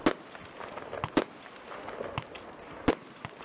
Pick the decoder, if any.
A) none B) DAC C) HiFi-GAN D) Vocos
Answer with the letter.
A